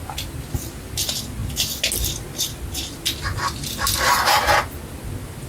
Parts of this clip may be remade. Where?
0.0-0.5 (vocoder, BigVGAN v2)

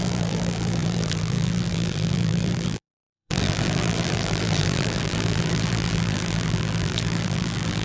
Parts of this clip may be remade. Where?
0.0-7.8 (vocoder, BigVGAN v2)

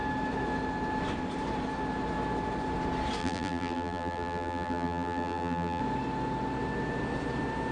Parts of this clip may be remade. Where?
3.2-5.8 (vocoder, BigVGAN v2)

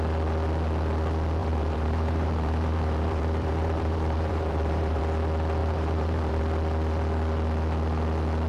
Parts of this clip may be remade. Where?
1.4-5.0 (vocoder, BigVGAN v2); 5.6-6.4

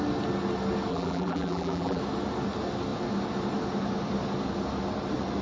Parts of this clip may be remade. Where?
0.9-2.0 (vocoder, BigVGAN v2)

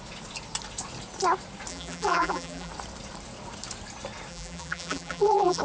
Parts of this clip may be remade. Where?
1.7-2.7 (vocoder, BigVGAN v2); 4.3-5.6

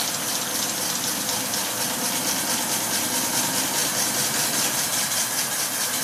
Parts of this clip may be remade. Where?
none